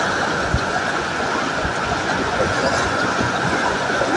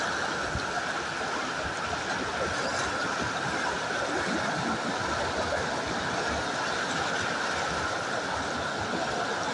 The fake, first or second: first